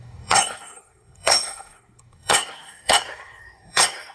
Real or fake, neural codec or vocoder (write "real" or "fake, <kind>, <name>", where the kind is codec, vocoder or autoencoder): fake, codec, SNAC